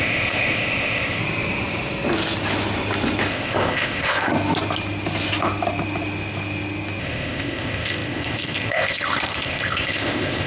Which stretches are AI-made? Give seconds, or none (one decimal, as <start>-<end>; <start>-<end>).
0.0-1.2; 3.3-4.3; 7.0-10.5